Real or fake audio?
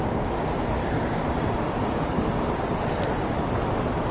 real